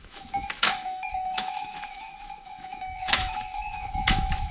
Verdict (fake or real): fake